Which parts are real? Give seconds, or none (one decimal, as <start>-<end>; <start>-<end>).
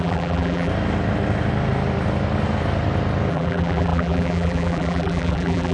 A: 0.7-3.3